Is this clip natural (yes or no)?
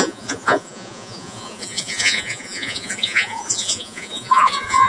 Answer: no